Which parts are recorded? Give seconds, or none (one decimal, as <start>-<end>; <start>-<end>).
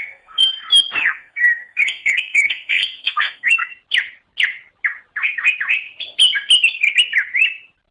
0.5-1.0; 3.7-7.9